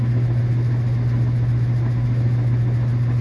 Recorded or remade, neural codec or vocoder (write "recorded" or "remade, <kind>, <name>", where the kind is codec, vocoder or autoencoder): recorded